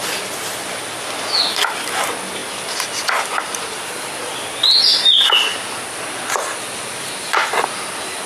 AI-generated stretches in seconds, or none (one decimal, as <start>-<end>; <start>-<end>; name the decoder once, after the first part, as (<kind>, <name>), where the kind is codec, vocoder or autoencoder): none